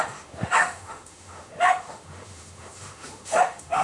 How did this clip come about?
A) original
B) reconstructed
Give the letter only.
B